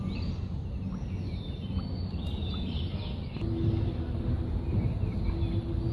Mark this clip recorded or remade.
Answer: recorded